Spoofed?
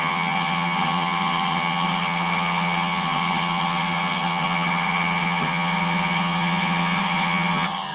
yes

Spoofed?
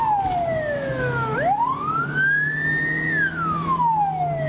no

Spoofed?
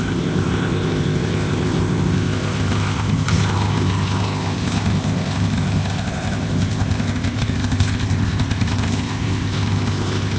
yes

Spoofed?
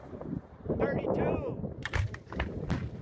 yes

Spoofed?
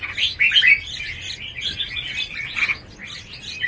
no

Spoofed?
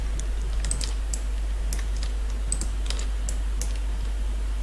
no